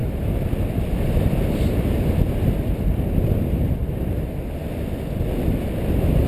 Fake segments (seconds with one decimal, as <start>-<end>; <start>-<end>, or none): 3.8-6.3